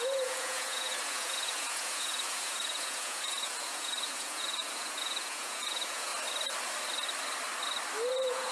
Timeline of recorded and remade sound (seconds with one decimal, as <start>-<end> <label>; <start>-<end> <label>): 0.0-6.1 remade; 6.1-8.1 recorded; 8.1-8.5 remade